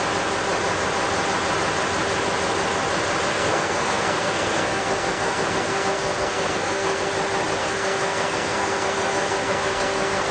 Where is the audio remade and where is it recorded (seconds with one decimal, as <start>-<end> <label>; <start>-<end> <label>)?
0.0-3.3 recorded; 3.3-7.1 remade; 7.1-7.6 recorded; 7.6-10.3 remade